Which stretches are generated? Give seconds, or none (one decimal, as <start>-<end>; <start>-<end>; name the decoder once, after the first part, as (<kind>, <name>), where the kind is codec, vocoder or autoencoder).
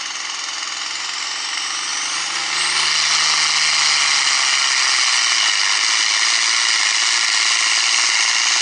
none